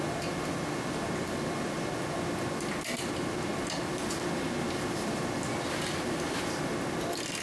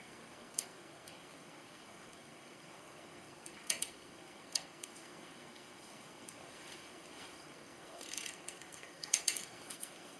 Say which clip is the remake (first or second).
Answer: second